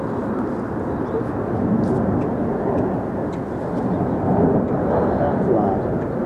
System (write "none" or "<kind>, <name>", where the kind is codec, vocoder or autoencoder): none